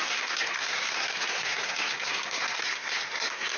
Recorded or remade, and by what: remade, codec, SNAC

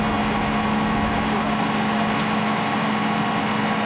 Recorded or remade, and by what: recorded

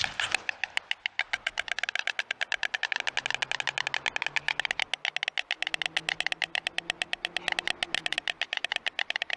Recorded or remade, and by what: recorded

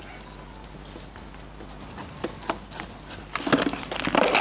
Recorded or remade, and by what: recorded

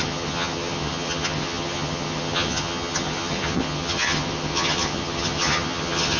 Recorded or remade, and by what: remade, vocoder, HiFi-GAN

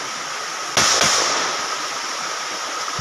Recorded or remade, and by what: recorded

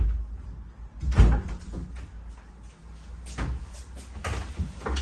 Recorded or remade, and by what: recorded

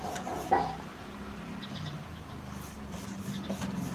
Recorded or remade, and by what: recorded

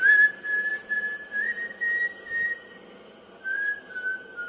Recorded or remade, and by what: recorded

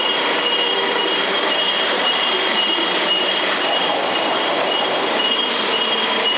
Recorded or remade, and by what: remade, vocoder, BigVGAN v2